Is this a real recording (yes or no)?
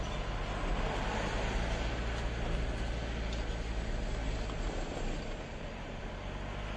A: yes